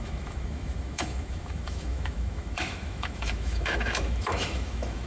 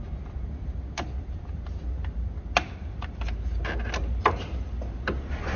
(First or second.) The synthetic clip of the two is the first